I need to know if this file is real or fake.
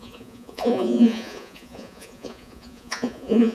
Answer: fake